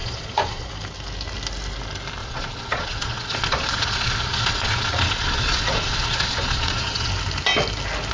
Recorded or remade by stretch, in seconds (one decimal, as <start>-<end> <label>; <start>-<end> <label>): 0.0-0.7 remade; 0.7-2.2 recorded; 2.2-7.1 remade; 7.1-8.1 recorded